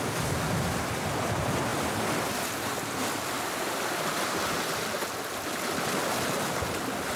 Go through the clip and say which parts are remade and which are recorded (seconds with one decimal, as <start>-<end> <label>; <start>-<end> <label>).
0.0-7.2 recorded